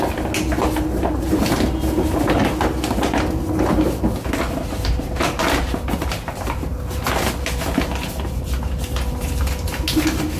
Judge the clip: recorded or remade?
recorded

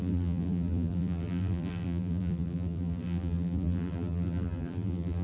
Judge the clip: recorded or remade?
remade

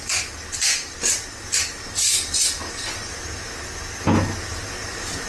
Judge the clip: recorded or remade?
recorded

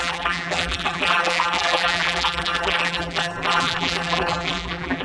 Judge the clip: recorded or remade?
remade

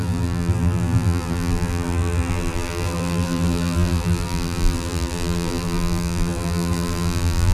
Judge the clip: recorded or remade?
remade